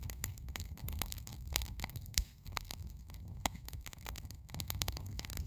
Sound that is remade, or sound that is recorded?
remade